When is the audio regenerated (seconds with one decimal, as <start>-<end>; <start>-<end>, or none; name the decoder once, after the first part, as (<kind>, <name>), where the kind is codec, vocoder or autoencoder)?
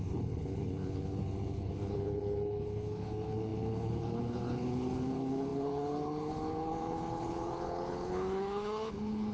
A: 0.0-9.3 (codec, HILCodec)